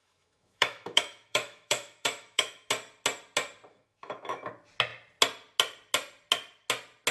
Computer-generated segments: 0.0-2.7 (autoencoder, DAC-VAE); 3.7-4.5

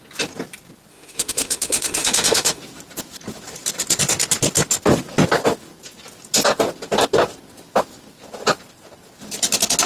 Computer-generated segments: 0.9-2.6 (autoencoder, DAC-VAE)

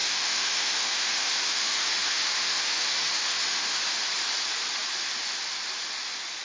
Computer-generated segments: 0.0-3.8 (autoencoder, DAC-VAE)

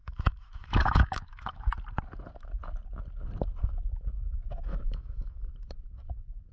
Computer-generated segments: 0.0-1.7 (autoencoder, DAC-VAE); 4.7-5.5

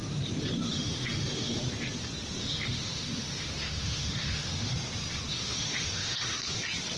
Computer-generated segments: 0.7-1.6 (autoencoder, DAC-VAE); 2.4-4.7; 5.3-6.6

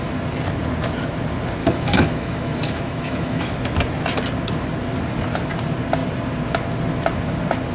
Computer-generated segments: 1.6-3.5 (autoencoder, DAC-VAE)

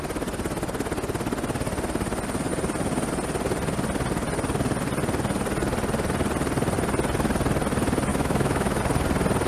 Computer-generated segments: 8.1-8.8 (autoencoder, DAC-VAE)

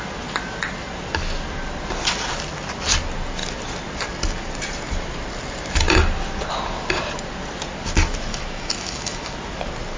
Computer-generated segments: 8.3-9.3 (autoencoder, DAC-VAE)